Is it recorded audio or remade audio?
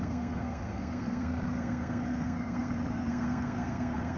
remade